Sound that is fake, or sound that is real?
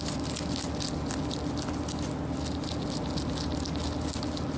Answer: real